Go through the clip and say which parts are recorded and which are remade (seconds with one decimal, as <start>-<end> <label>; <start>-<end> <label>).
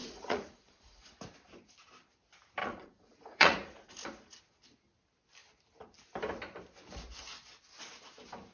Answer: 0.0-1.2 remade; 1.2-2.6 recorded; 2.6-4.4 remade; 4.4-8.5 recorded